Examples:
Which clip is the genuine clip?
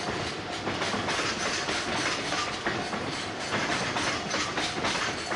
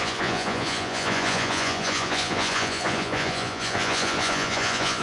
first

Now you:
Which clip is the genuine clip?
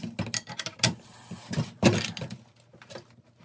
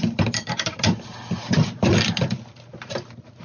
first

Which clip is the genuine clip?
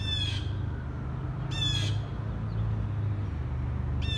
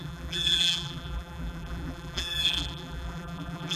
first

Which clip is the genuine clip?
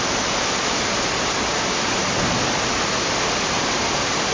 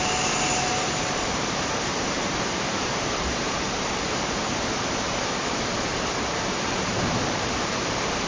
first